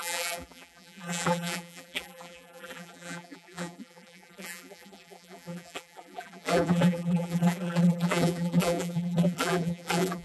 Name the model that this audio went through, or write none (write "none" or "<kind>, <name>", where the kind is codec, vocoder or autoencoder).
vocoder, BigVGAN v2